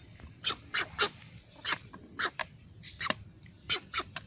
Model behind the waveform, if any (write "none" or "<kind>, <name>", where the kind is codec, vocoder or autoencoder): none